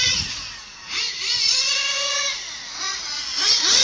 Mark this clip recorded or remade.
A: remade